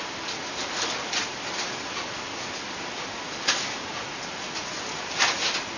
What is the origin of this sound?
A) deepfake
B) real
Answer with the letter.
B